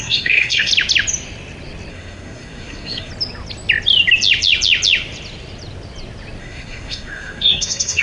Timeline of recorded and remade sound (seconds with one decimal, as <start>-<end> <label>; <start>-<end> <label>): 0.0-0.7 remade; 0.7-1.9 recorded; 1.9-3.1 remade; 3.1-6.4 recorded; 6.4-8.0 remade